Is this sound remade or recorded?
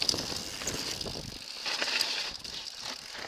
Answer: recorded